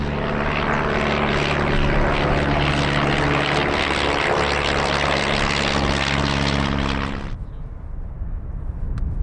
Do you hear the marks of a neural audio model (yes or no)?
no